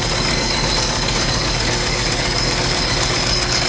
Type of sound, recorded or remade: remade